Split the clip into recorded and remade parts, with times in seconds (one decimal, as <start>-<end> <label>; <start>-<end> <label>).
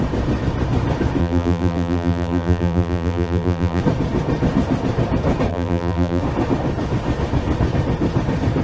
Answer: 0.0-1.2 recorded; 1.2-3.8 remade; 3.8-5.5 recorded; 5.5-6.2 remade; 6.2-8.6 recorded